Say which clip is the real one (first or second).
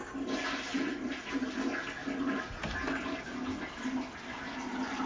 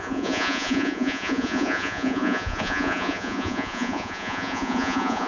first